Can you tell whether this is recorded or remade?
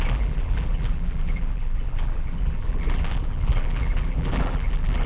remade